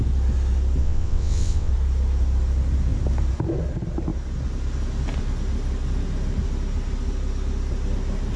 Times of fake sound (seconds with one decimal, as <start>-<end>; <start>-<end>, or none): 0.8-1.7